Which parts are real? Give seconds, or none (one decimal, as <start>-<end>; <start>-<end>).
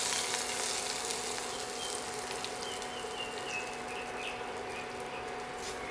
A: 0.0-5.9